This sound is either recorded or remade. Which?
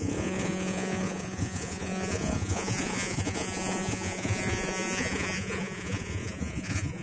remade